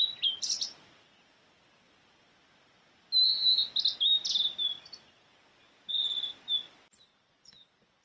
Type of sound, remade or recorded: recorded